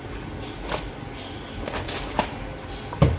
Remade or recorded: recorded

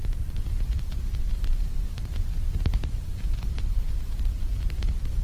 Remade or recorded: remade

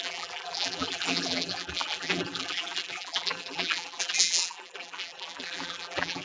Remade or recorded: remade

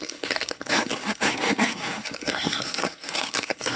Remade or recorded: remade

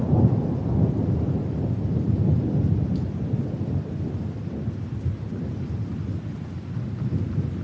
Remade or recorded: recorded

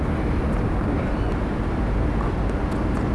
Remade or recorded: recorded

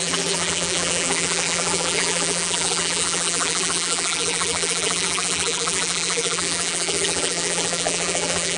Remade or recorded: remade